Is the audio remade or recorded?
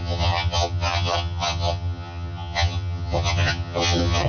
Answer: remade